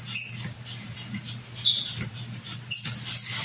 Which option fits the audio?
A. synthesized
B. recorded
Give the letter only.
B